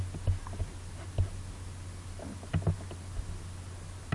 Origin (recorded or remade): recorded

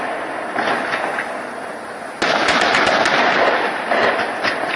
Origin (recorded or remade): recorded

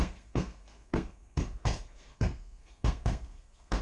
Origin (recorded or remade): remade